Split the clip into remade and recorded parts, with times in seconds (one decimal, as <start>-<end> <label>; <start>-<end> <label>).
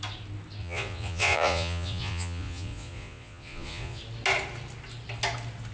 0.0-0.6 recorded; 0.6-4.0 remade; 4.0-5.7 recorded